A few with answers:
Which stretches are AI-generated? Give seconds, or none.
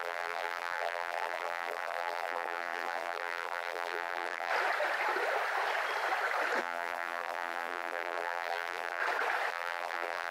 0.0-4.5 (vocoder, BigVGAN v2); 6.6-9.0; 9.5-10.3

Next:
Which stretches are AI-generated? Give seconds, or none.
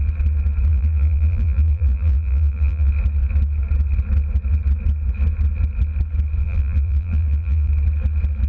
0.7-2.9 (vocoder, BigVGAN v2); 6.4-7.7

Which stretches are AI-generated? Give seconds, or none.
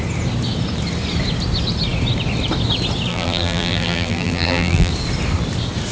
3.1-4.9 (vocoder, BigVGAN v2)